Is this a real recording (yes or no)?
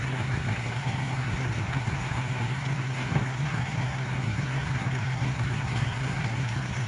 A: no